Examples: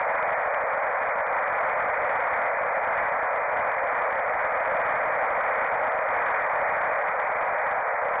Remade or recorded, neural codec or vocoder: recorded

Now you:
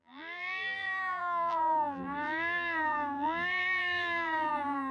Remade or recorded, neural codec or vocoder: remade, vocoder, BigVGAN v2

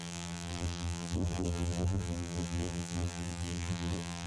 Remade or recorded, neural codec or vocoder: remade, vocoder, BigVGAN v2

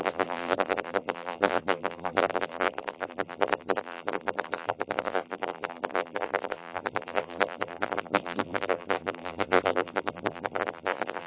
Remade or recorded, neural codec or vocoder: remade, vocoder, BigVGAN v2